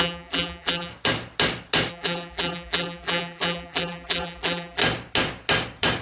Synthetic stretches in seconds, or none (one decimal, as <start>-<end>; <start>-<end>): 0.0-0.9; 1.9-4.8